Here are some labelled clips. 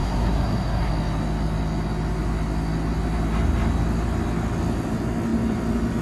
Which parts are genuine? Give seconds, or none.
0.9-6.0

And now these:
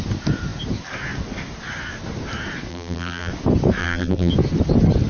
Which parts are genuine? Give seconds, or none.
0.0-2.7; 3.3-3.8; 4.3-5.1

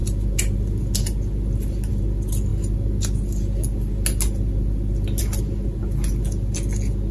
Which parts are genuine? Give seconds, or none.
0.0-7.1